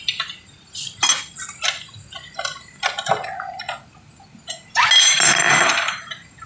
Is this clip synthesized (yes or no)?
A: no